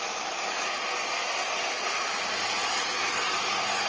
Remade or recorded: recorded